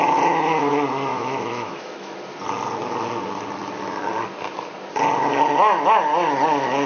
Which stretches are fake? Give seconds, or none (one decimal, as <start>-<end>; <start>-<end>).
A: 1.1-2.2